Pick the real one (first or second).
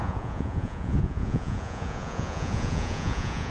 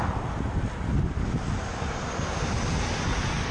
second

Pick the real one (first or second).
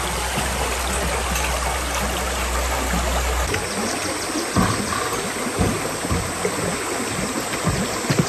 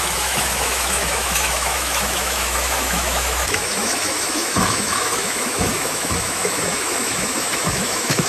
first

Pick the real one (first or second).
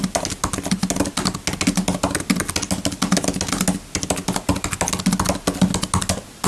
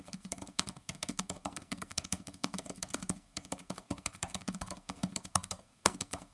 first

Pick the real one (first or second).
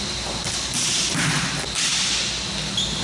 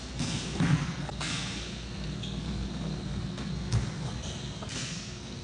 first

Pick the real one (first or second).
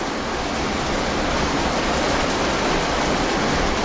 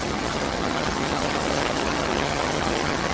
first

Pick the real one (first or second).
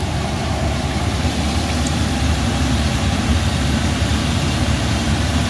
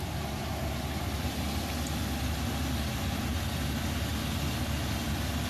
second